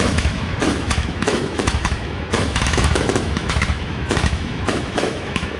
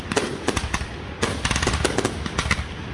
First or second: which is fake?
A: first